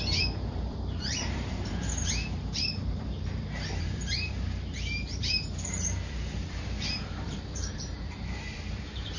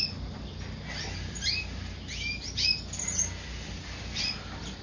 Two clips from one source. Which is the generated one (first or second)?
first